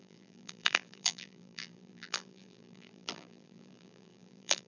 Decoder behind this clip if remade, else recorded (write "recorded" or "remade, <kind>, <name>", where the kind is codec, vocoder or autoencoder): remade, vocoder, BigVGAN v2